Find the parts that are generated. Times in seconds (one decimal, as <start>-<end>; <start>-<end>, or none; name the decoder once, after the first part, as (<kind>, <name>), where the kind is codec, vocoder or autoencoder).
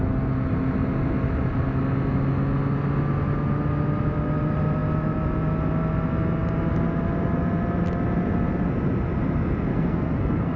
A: 9.7-10.6 (codec, SNAC)